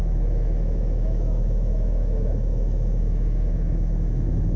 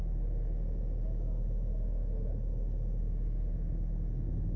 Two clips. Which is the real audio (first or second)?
second